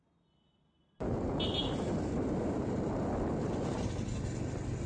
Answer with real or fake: real